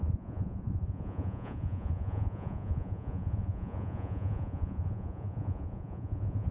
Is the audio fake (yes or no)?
yes